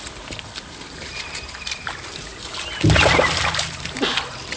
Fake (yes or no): no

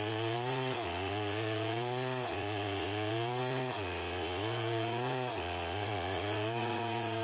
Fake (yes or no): yes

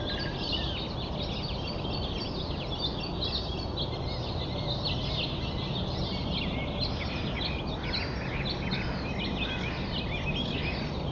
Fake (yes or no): no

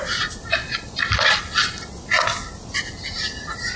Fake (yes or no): no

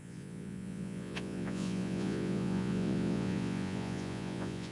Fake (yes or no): yes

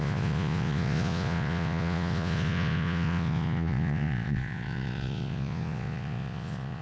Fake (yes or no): yes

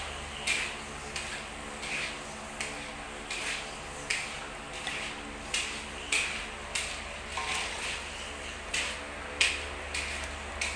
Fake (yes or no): no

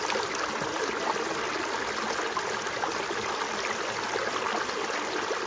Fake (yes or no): no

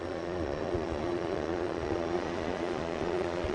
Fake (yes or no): yes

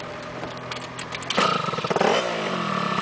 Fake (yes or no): no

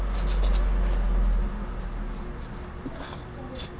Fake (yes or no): no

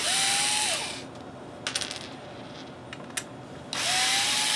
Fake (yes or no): no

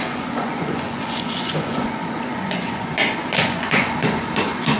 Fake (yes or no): yes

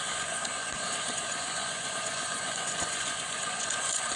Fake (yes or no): yes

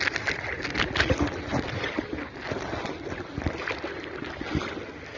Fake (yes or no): no